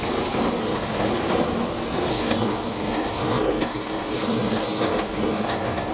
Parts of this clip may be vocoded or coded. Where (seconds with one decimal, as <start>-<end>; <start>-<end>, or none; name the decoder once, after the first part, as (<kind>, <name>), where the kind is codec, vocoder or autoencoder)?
0.6-1.1 (codec, SNAC); 2.1-5.9